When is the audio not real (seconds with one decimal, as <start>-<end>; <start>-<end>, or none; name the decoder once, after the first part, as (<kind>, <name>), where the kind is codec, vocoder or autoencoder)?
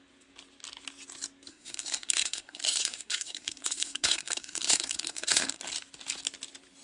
1.5-5.6 (codec, SNAC)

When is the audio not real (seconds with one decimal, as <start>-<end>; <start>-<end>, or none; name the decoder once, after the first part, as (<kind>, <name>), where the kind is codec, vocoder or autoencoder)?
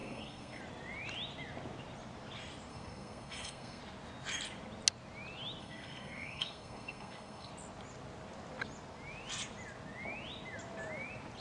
0.0-0.6 (codec, SNAC); 2.7-3.8; 5.6-7.5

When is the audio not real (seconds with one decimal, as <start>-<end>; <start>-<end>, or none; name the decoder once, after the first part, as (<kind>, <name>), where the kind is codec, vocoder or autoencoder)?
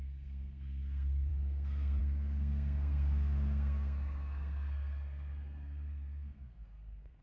0.0-7.2 (codec, SNAC)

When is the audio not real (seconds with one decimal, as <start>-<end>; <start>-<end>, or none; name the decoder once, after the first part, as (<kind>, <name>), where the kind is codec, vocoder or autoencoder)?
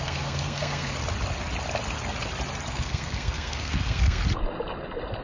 0.0-1.0 (codec, SNAC); 2.7-4.2